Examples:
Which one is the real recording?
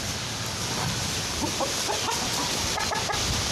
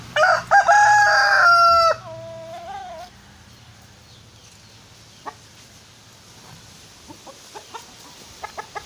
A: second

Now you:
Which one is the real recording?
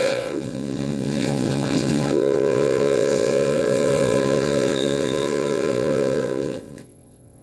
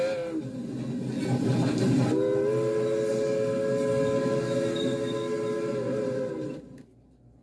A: second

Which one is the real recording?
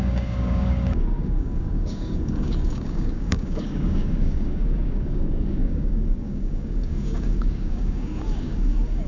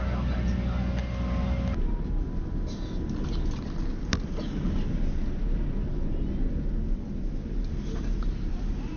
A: second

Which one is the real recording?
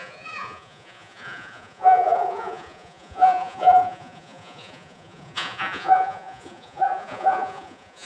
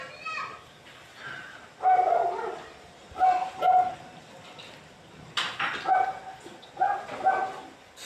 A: second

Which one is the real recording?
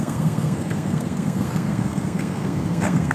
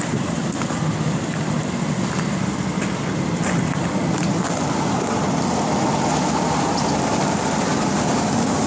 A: second